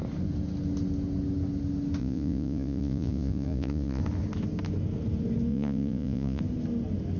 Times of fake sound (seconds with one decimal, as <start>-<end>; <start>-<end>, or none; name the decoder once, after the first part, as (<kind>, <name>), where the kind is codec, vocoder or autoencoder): 2.0-4.0 (vocoder, Vocos); 5.5-6.4